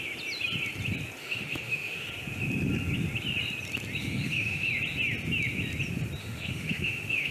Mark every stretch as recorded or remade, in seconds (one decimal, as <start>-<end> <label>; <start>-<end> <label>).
0.0-1.2 recorded; 1.2-2.1 remade; 2.1-4.0 recorded; 4.0-4.7 remade; 4.7-6.2 recorded; 6.2-7.3 remade